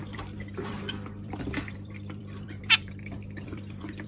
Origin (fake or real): fake